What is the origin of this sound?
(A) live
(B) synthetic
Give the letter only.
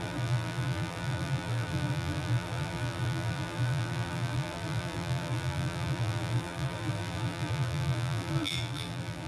B